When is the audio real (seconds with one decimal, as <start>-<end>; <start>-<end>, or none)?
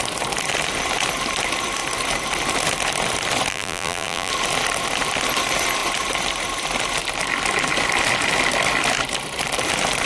0.0-3.5; 4.3-10.1